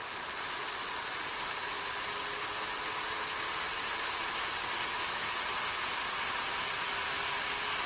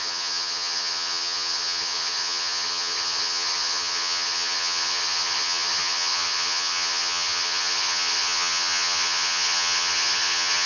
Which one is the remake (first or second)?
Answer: second